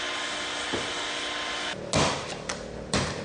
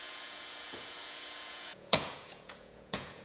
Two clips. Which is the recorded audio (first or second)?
first